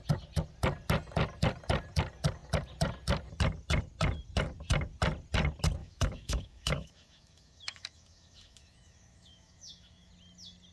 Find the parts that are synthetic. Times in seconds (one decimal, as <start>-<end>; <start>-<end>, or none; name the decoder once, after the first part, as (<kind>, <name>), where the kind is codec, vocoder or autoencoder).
5.8-10.1 (autoencoder, DAC-VAE)